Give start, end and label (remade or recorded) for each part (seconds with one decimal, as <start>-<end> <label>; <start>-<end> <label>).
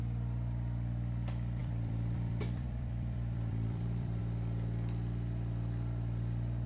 0.0-1.6 recorded; 1.6-4.2 remade; 4.2-6.7 recorded